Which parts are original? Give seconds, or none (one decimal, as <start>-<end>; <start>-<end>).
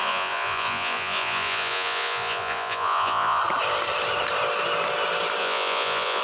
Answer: 3.4-5.4